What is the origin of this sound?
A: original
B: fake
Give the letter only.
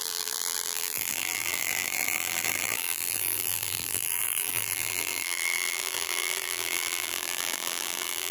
B